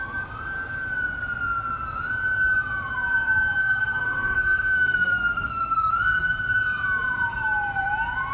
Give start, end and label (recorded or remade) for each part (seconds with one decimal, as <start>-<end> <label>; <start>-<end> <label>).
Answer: 0.0-3.6 recorded; 3.6-6.4 remade; 6.4-8.3 recorded

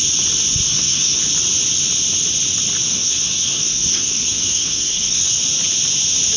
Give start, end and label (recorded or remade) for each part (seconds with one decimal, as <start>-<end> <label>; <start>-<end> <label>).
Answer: 0.0-0.7 recorded; 0.7-1.2 remade; 1.2-2.9 recorded; 2.9-5.4 remade; 5.4-6.4 recorded